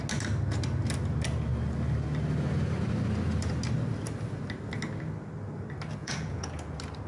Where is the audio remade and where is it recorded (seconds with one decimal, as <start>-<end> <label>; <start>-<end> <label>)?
0.0-6.0 recorded; 6.0-6.5 remade; 6.5-7.1 recorded